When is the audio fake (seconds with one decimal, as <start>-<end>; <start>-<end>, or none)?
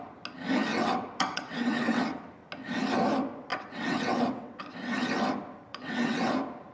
0.7-2.0; 3.5-4.6; 5.7-6.3